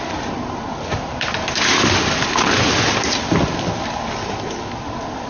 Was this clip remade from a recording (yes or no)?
no